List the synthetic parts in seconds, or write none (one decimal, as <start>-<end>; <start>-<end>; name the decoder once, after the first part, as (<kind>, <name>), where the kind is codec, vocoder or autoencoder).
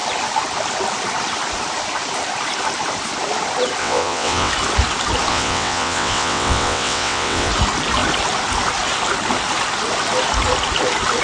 3.8-4.5 (vocoder, WaveNeXt); 5.3-7.5